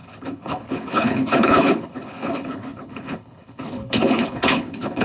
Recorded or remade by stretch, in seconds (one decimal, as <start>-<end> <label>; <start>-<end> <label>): 0.0-5.0 remade